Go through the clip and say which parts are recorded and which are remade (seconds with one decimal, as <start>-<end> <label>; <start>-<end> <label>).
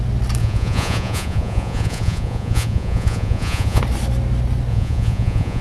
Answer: 0.0-0.4 recorded; 0.4-3.8 remade; 3.8-4.7 recorded; 4.7-5.6 remade